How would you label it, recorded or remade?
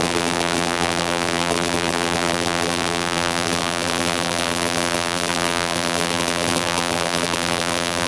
remade